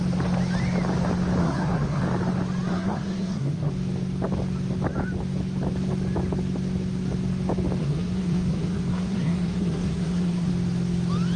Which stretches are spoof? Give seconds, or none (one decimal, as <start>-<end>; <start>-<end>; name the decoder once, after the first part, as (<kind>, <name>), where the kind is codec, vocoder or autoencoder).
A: 1.4-2.0 (codec, SNAC); 2.7-3.7; 7.8-10.5